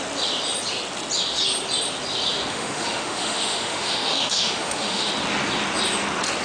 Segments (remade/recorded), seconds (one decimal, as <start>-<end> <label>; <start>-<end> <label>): 0.0-2.5 recorded; 2.5-5.1 remade; 5.1-6.4 recorded